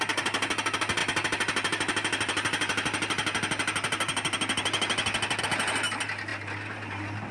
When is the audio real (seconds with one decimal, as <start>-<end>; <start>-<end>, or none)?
0.0-7.3